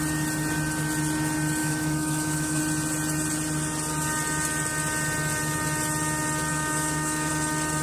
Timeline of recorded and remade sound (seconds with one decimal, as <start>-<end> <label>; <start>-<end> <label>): 0.0-1.6 recorded; 1.6-2.6 remade; 2.6-6.5 recorded; 6.5-7.3 remade; 7.3-7.8 recorded

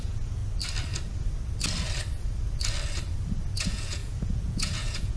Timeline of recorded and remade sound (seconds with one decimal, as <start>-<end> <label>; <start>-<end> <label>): 0.0-0.4 remade; 0.4-3.5 recorded; 3.5-5.2 remade